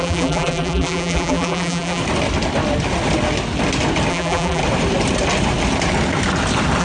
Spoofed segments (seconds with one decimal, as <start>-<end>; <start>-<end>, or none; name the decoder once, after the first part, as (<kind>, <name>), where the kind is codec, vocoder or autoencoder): 0.0-2.0 (vocoder, BigVGAN v2); 4.1-4.6